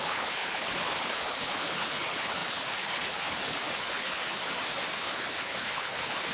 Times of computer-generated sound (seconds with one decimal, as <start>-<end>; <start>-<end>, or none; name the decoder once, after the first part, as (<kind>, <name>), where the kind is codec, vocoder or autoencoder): 0.0-4.4 (codec, HILCodec); 4.9-6.3